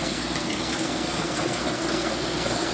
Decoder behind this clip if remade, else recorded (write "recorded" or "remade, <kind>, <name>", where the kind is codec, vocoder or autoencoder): remade, codec, SNAC